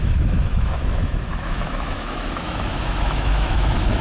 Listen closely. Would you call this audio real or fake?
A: fake